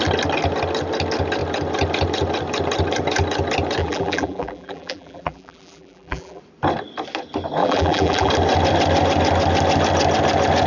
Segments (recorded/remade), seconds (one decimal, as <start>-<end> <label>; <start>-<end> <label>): 0.0-3.8 recorded; 3.8-6.4 remade; 6.4-7.6 recorded; 7.6-8.3 remade; 8.3-10.7 recorded